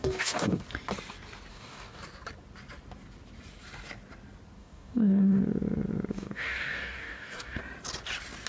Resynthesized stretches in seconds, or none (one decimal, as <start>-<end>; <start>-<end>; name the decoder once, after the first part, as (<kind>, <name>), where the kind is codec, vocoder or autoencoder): 0.0-0.6 (codec, DAC); 1.5-2.0; 4.6-5.4; 6.1-7.6